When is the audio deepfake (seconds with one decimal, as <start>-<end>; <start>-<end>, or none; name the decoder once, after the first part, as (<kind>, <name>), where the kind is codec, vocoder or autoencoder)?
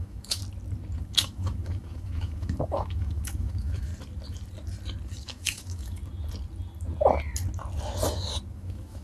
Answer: 0.0-0.4 (autoencoder, DAC-VAE); 1.0-3.9; 5.2-6.0; 8.5-9.0